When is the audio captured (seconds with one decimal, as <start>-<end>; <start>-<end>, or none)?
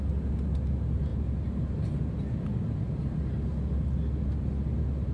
0.0-5.1